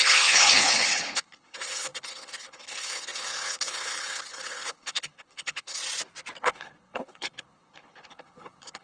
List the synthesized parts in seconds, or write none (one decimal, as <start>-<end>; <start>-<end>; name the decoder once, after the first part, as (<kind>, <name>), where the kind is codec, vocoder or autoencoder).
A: 0.0-5.8 (codec, HILCodec); 6.4-8.8